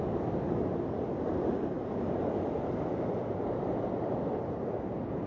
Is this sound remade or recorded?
recorded